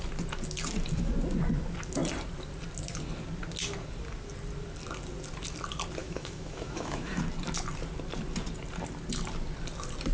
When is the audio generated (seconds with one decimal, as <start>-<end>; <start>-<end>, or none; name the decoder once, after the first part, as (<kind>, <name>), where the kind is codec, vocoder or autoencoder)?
6.0-7.2 (autoencoder, DAC-VAE)

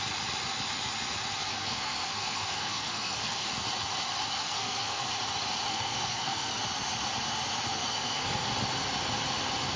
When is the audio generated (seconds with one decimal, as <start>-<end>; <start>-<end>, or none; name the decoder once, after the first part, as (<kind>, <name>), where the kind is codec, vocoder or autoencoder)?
1.4-3.5 (codec, SNAC); 4.3-5.1; 5.7-6.6; 7.8-8.5

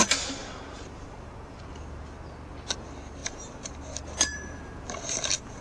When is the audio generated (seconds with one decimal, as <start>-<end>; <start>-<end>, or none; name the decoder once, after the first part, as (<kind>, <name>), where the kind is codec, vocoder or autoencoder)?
0.4-1.6 (vocoder, BigVGAN v2); 3.2-3.8; 4.3-5.6

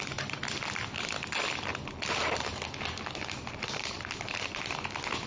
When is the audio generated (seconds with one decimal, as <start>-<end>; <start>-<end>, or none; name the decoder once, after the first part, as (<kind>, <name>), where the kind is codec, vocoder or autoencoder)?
0.0-5.3 (vocoder, BigVGAN v2)

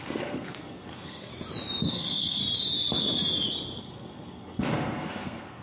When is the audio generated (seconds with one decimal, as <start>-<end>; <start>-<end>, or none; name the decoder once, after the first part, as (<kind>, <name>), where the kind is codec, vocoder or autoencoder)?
0.0-1.3 (codec, SNAC); 1.9-2.4; 3.8-5.6